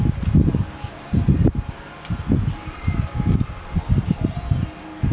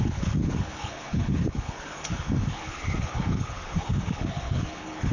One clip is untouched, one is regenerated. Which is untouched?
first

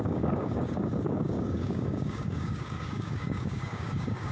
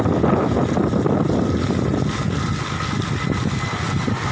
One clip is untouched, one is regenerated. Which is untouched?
second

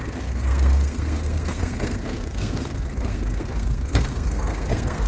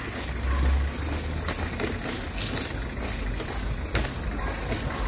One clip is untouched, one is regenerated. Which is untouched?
second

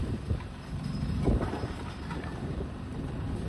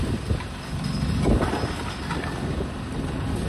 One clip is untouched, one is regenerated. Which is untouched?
second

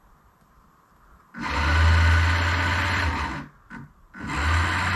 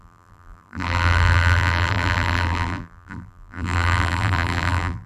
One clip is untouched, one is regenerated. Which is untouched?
first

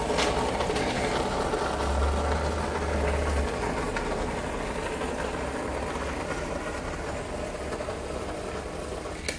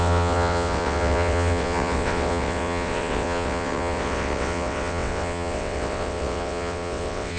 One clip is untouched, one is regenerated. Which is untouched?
first